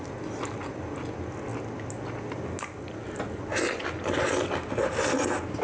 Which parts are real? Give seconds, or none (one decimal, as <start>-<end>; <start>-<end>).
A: 0.0-5.6